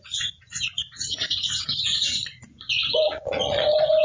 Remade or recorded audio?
remade